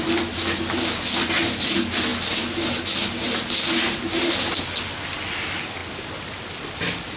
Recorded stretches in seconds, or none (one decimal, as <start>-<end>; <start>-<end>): 0.0-7.2